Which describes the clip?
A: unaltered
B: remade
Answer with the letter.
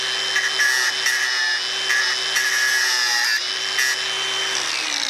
A